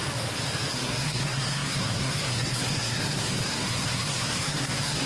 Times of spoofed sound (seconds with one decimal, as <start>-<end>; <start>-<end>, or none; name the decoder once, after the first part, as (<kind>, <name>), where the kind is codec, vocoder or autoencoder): 0.7-5.1 (codec, SNAC)